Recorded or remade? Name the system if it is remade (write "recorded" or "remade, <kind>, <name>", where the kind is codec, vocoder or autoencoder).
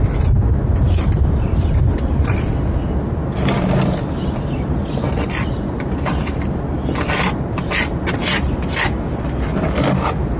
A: recorded